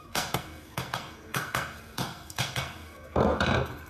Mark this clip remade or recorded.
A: remade